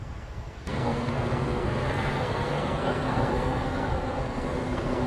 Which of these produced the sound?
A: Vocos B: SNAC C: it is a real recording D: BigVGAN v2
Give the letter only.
B